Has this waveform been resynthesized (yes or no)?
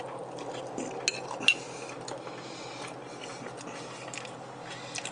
no